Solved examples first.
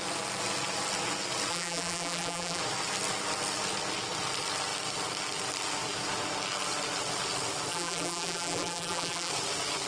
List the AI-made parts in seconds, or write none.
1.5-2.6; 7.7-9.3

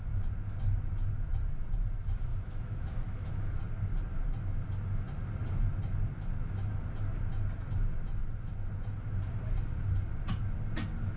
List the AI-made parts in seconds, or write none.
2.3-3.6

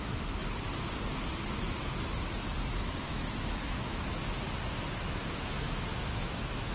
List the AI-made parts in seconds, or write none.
0.0-0.4; 2.9-4.1; 4.9-6.7

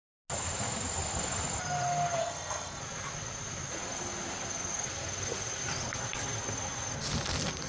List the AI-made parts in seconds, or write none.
2.2-2.8

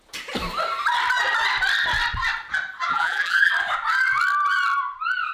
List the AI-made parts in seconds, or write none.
2.9-3.5

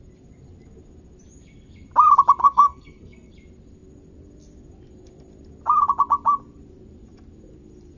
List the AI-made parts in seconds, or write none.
2.4-3.3

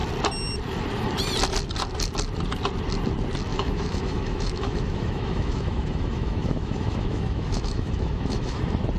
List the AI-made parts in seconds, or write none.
3.5-8.6

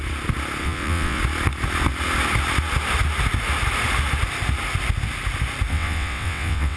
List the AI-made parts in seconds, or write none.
0.6-1.2; 5.7-6.8